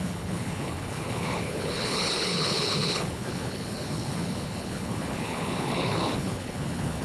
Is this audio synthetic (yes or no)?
yes